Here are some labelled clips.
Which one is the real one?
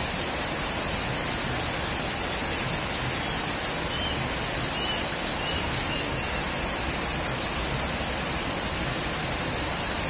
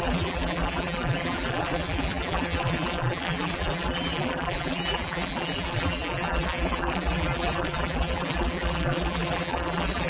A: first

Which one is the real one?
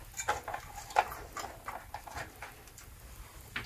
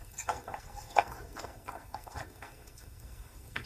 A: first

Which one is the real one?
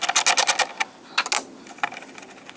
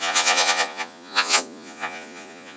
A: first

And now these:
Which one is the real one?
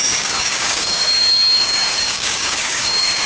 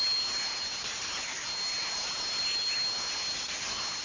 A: second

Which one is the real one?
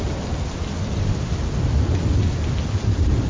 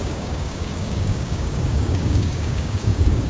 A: first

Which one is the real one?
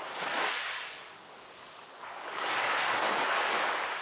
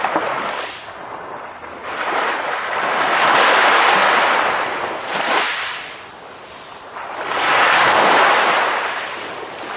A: second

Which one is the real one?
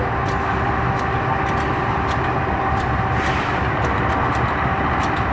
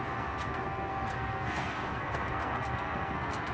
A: first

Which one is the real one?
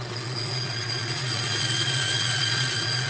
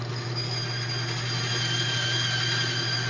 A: second